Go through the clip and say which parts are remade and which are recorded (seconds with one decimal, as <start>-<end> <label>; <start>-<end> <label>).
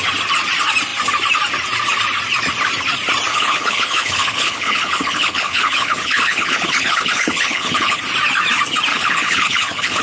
0.0-3.3 recorded; 3.3-8.0 remade; 8.0-8.9 recorded; 8.9-10.0 remade